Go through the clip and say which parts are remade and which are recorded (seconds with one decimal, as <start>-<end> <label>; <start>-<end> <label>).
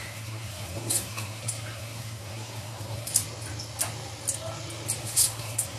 0.0-3.1 remade; 3.1-5.0 recorded; 5.0-5.8 remade